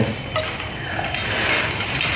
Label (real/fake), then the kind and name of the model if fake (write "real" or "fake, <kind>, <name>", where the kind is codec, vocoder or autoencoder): real